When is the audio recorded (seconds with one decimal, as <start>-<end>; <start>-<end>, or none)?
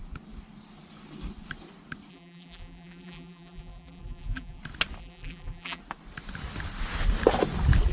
0.0-2.1; 4.6-5.0; 5.8-7.9